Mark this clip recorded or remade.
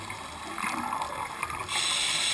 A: recorded